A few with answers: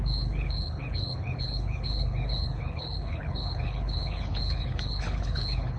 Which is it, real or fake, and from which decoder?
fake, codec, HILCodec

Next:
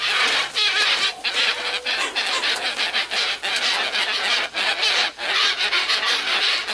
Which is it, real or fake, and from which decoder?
real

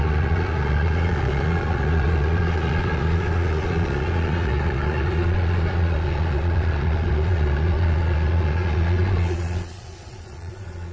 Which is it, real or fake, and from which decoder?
fake, vocoder, Vocos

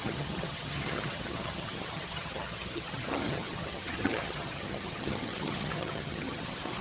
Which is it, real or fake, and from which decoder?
fake, vocoder, HiFi-GAN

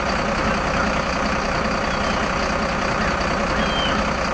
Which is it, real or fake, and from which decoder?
real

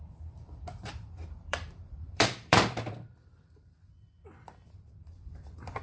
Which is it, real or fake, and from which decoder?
fake, vocoder, BigVGAN v2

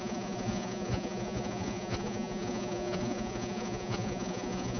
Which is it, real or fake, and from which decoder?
fake, vocoder, Vocos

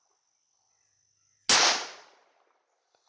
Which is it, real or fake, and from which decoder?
real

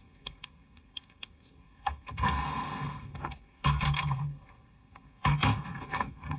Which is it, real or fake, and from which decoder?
fake, codec, SNAC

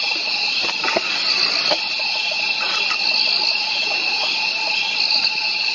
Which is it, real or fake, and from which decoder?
real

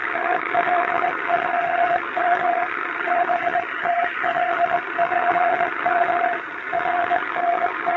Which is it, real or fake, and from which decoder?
fake, vocoder, HiFi-GAN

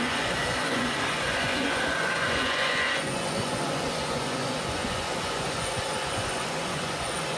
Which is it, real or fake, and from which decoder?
fake, vocoder, Vocos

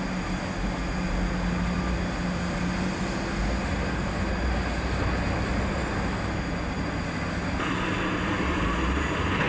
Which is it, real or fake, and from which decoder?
real